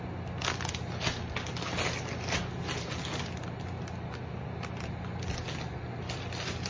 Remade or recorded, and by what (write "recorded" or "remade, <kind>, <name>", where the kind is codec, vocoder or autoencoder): recorded